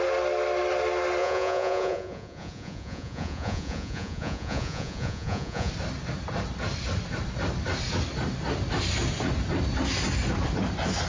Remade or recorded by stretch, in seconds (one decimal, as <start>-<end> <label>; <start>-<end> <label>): 0.0-1.2 recorded; 1.2-5.7 remade; 5.7-11.1 recorded